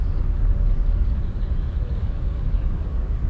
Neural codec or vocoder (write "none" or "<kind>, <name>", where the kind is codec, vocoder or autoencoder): codec, DAC